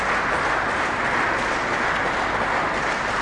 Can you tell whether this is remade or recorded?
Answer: recorded